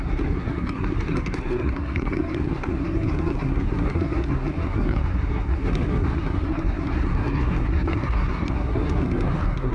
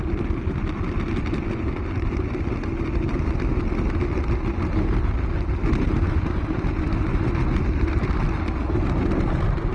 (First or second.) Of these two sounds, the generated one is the first